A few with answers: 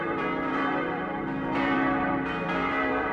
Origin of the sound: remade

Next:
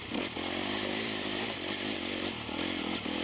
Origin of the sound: remade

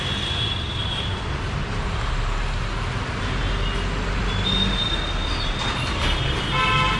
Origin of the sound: recorded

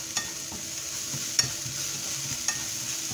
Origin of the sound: recorded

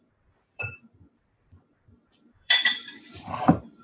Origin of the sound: remade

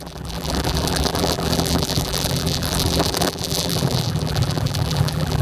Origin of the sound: remade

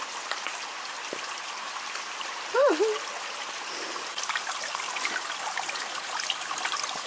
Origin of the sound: recorded